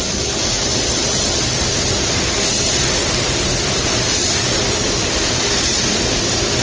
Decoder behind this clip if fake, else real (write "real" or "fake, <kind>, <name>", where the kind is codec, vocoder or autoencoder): fake, vocoder, BigVGAN v2